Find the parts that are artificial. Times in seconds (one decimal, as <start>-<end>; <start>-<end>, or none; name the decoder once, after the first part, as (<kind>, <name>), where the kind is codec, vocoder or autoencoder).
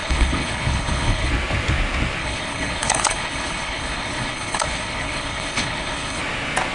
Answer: 0.0-1.3 (codec, HILCodec); 2.2-6.2